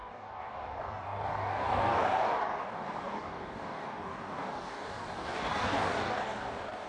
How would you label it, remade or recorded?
remade